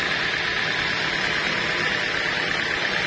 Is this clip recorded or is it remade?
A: recorded